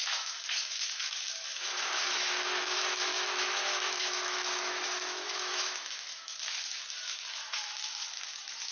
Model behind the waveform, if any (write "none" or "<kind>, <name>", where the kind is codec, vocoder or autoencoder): autoencoder, DAC-VAE